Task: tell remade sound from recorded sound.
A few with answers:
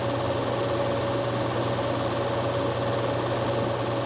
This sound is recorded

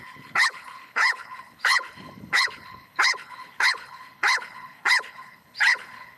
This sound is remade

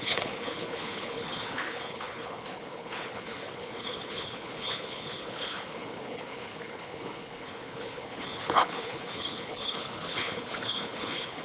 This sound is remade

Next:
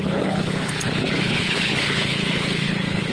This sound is remade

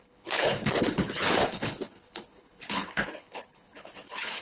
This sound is remade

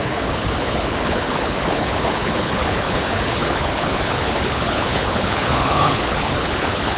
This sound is remade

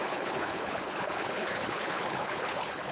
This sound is remade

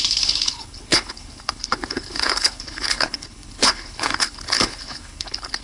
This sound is remade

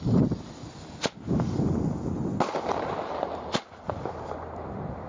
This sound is recorded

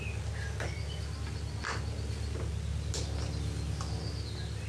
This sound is recorded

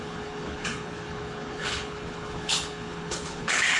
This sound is remade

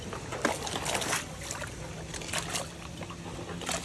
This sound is recorded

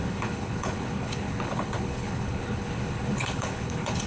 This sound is remade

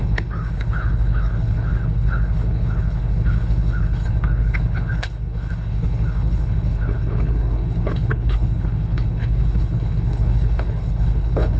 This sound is remade